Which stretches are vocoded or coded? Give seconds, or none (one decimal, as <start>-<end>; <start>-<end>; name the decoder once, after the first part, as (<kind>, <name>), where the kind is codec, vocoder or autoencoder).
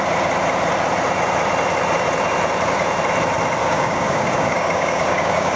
3.6-5.6 (codec, DAC)